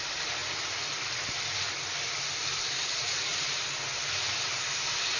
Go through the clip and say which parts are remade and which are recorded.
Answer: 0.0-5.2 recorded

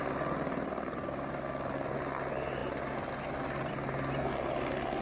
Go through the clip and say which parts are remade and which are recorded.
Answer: 0.0-5.0 recorded

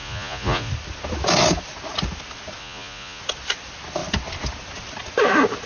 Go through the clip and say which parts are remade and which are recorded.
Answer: 0.0-0.7 remade; 0.7-2.6 recorded; 2.6-3.2 remade; 3.2-5.7 recorded

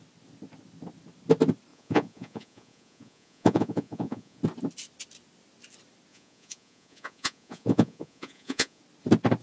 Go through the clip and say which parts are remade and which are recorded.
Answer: 0.0-1.7 recorded; 1.7-4.4 remade; 4.4-6.1 recorded; 6.1-8.8 remade; 8.8-9.4 recorded

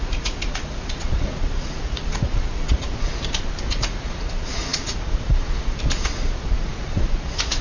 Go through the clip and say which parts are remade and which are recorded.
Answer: 0.0-3.1 remade; 3.1-3.7 recorded; 3.7-7.6 remade

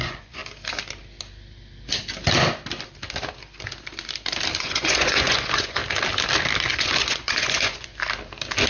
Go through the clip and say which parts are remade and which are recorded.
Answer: 0.0-0.4 remade; 0.4-4.6 recorded; 4.6-5.8 remade; 5.8-6.7 recorded; 6.7-7.9 remade; 7.9-8.7 recorded

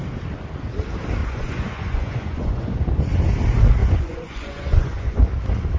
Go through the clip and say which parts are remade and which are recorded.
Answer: 0.0-1.2 recorded; 1.2-2.7 remade; 2.7-3.8 recorded; 3.8-5.2 remade; 5.2-5.8 recorded

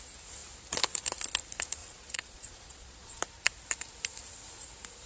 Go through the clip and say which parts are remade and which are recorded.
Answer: 0.0-1.8 recorded; 1.8-3.2 remade; 3.2-5.1 recorded